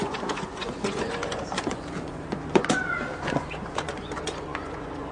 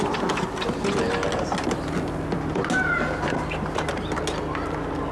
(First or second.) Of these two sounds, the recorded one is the second